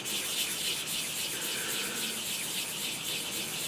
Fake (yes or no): no